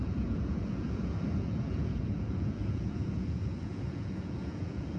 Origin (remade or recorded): remade